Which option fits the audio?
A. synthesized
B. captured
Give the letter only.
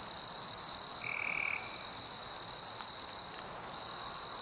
B